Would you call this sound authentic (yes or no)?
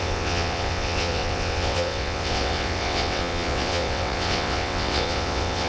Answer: no